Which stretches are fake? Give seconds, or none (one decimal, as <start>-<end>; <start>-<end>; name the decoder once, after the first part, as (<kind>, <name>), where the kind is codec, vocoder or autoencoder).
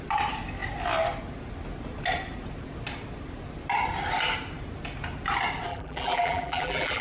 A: 5.7-7.0 (vocoder, BigVGAN v2)